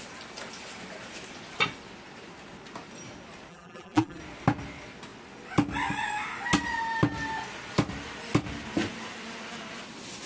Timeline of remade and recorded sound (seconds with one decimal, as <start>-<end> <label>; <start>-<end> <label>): 0.0-3.5 recorded; 3.5-4.2 remade; 4.2-10.3 recorded